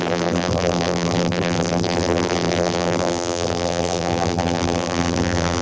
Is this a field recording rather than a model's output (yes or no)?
no